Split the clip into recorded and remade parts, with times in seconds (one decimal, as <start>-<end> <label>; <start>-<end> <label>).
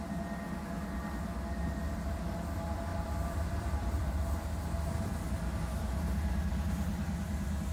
0.0-2.9 recorded; 2.9-4.3 remade; 4.3-7.7 recorded